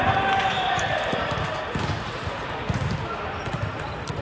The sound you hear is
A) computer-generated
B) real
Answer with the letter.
B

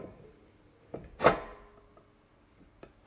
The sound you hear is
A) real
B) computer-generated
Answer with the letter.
A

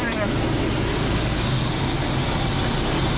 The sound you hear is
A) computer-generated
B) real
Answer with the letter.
B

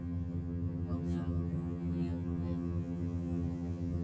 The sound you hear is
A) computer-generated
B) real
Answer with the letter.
A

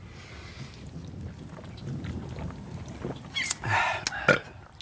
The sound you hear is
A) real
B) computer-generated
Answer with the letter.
A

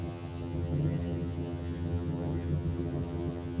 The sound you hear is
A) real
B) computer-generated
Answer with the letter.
B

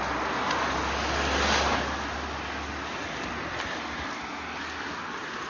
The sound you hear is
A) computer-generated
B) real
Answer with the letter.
B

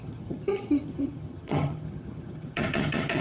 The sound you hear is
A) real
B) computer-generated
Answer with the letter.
B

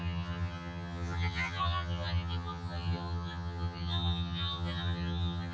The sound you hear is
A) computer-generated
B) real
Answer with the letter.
A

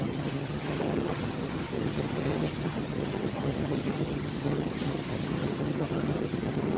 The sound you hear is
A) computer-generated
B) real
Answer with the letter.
A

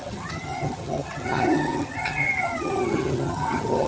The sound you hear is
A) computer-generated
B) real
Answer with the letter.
A